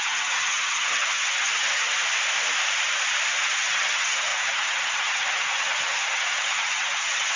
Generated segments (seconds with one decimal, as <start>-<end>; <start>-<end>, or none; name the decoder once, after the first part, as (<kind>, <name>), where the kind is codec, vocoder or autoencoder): 0.0-1.9 (vocoder, HiFi-GAN); 3.4-7.4